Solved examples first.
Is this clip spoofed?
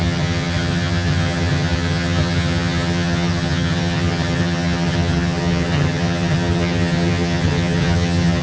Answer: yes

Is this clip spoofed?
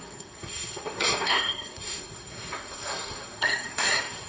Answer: yes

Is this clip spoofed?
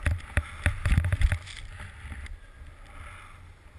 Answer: no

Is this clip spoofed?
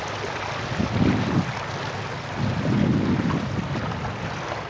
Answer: no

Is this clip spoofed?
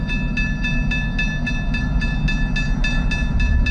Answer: no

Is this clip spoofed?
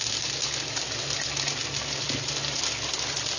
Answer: no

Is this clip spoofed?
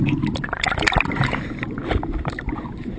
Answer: no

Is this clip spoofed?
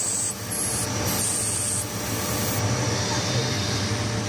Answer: no